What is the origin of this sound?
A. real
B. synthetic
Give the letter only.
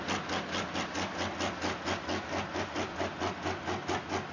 A